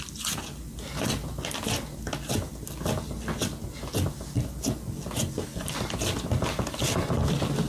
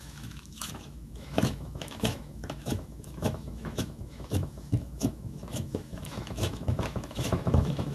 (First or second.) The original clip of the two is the first